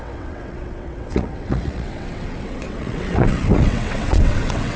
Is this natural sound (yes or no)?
no